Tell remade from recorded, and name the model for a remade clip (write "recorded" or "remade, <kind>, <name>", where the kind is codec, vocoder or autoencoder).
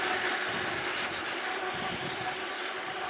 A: remade, vocoder, BigVGAN v2